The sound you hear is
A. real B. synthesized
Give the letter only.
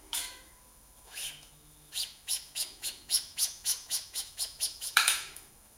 B